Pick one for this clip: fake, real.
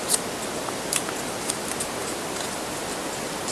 real